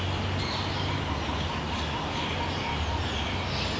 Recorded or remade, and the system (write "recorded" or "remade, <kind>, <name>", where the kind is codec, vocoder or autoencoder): recorded